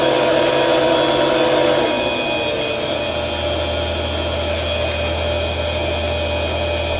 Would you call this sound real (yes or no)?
yes